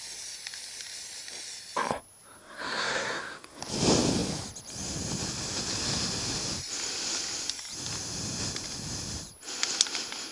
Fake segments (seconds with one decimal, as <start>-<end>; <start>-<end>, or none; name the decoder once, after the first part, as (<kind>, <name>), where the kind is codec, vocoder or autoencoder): 2.4-3.6 (codec, SNAC)